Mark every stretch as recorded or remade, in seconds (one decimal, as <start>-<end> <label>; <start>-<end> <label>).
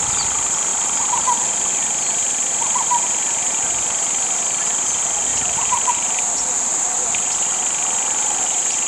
0.0-0.7 recorded; 0.7-1.7 remade; 1.7-5.3 recorded; 5.3-5.9 remade; 5.9-8.9 recorded